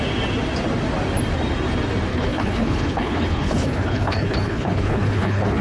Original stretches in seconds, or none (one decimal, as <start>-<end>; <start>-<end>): 0.0-2.1